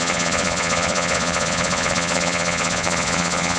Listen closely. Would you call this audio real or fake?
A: fake